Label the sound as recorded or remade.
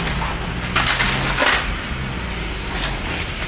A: recorded